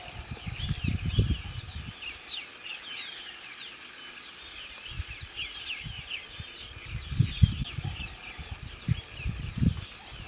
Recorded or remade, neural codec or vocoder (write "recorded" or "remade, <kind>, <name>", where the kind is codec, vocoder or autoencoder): recorded